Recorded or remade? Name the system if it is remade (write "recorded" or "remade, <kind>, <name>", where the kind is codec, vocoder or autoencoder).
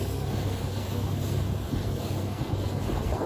remade, codec, SNAC